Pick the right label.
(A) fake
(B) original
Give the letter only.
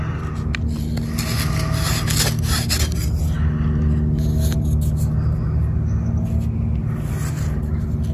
B